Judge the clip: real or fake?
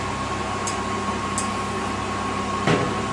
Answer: real